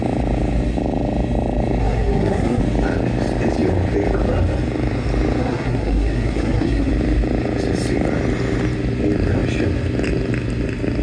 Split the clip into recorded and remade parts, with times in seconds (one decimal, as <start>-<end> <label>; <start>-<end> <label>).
0.0-1.8 recorded; 1.8-2.6 remade; 2.6-5.4 recorded; 5.4-6.9 remade; 6.9-11.0 recorded